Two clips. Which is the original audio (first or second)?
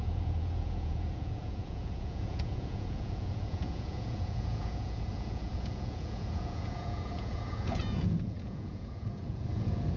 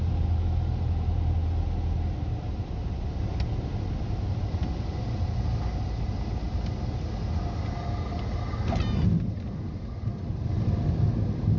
second